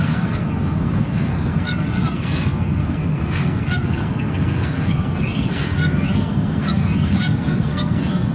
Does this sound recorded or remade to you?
remade